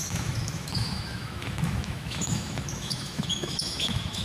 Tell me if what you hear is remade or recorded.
remade